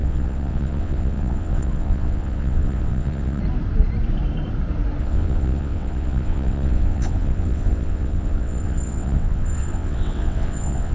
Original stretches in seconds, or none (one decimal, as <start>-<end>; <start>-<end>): 3.4-5.0